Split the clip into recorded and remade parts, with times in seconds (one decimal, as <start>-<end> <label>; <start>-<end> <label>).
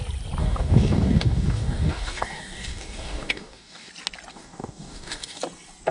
0.0-0.4 recorded; 0.4-3.9 remade; 3.9-4.3 recorded; 4.3-5.4 remade; 5.4-5.9 recorded